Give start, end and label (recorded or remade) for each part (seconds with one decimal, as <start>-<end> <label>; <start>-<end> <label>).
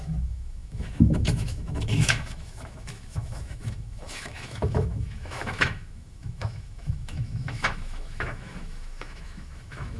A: 0.0-10.0 remade